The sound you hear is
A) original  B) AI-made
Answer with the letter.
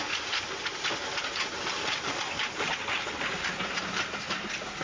A